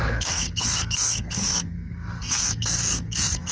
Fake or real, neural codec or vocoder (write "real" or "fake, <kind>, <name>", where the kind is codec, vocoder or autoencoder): fake, codec, SNAC